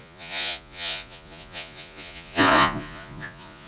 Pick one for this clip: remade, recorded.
remade